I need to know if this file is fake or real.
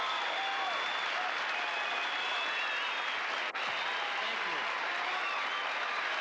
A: real